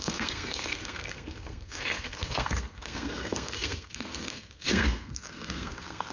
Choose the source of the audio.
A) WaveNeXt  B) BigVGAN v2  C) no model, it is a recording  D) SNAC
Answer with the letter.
D